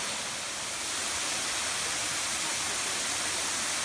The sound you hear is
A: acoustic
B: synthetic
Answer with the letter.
A